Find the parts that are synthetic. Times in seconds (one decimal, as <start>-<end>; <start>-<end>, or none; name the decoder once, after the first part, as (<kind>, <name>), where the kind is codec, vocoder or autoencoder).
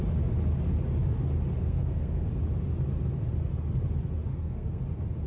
1.6-2.3 (codec, SNAC); 4.3-4.8